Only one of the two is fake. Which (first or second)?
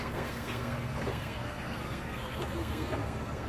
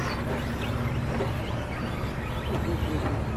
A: first